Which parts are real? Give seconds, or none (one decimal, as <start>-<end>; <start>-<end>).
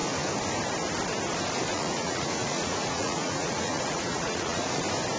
0.0-1.7; 4.8-5.2